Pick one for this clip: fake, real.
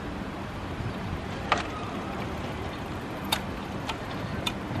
fake